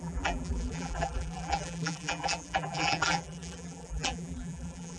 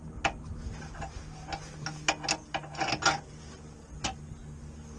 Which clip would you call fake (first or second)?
first